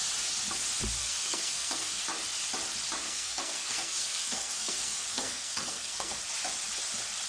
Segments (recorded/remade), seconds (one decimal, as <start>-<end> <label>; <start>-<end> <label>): 0.0-1.0 recorded; 1.0-2.0 remade; 2.0-3.0 recorded; 3.0-6.2 remade; 6.2-7.3 recorded